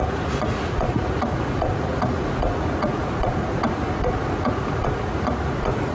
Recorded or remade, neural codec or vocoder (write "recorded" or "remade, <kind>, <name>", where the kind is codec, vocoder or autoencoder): remade, vocoder, Vocos